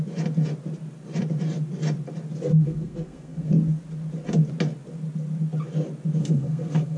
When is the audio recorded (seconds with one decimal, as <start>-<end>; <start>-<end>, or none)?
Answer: 0.0-2.5; 3.5-6.2